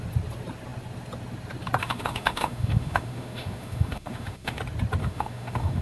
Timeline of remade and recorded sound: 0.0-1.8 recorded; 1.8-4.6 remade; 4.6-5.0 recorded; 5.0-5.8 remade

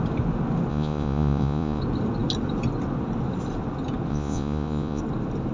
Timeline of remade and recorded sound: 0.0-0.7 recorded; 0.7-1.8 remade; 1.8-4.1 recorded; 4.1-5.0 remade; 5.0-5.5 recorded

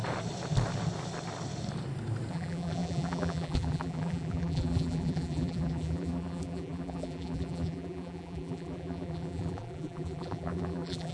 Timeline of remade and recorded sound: 0.0-2.3 recorded; 2.3-11.1 remade

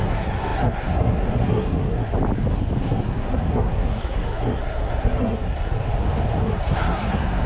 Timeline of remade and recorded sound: 0.0-2.1 remade; 2.1-2.8 recorded; 2.8-5.8 remade; 5.8-6.4 recorded; 6.4-7.5 remade